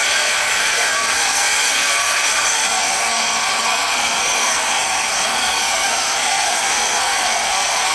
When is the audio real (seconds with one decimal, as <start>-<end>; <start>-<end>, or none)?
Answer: none